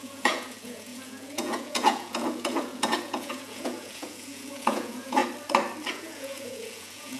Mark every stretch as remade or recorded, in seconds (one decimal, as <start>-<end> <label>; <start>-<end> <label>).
0.0-5.2 remade; 5.2-5.9 recorded; 5.9-7.2 remade